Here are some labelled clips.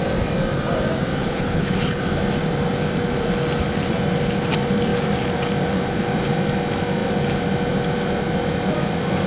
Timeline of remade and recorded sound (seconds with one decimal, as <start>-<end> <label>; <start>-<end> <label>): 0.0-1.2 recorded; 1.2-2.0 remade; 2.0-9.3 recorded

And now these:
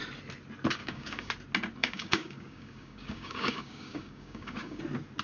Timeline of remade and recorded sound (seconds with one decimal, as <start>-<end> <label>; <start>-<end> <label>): 0.0-0.8 recorded; 0.8-1.3 remade; 1.3-1.8 recorded; 1.8-4.8 remade; 4.8-5.2 recorded

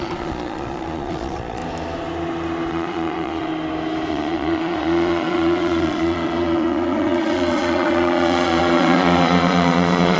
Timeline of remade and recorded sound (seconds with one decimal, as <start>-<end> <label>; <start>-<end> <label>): 0.0-1.6 remade; 1.6-2.7 recorded; 2.7-3.5 remade; 3.5-4.1 recorded; 4.1-10.2 remade

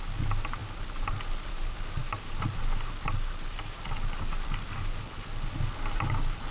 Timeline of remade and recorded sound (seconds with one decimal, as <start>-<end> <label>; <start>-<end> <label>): 0.0-6.5 recorded

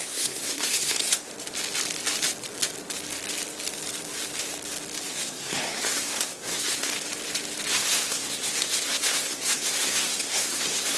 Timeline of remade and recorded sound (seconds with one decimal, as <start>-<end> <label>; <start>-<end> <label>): 0.0-1.3 remade; 1.3-5.1 recorded; 5.1-6.9 remade; 6.9-7.7 recorded; 7.7-11.0 remade

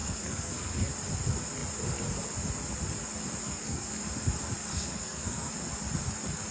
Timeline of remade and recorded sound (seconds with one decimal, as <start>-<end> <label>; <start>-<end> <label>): 0.0-0.9 remade; 0.9-3.4 recorded; 3.4-4.0 remade; 4.0-4.7 recorded; 4.7-5.5 remade; 5.5-6.5 recorded

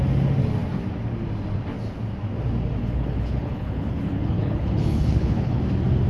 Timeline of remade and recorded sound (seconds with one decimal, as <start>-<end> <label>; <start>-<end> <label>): 0.0-2.8 recorded; 2.8-5.6 remade; 5.6-6.1 recorded

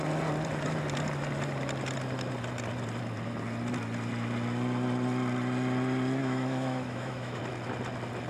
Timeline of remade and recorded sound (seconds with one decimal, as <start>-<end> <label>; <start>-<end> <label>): 0.0-6.2 recorded; 6.2-7.4 remade; 7.4-8.3 recorded